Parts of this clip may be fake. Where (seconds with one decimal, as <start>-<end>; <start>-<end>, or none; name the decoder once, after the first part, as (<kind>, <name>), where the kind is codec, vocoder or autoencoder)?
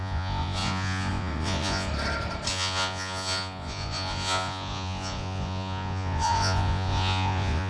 0.0-1.9 (vocoder, Vocos); 2.5-7.7